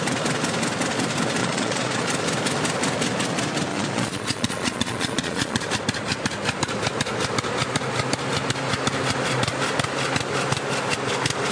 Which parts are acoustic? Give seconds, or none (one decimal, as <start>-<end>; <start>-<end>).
0.0-1.4; 2.0-3.7; 5.7-11.5